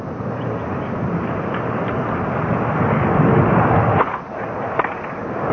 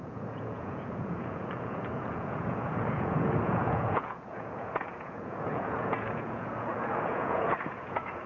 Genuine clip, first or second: first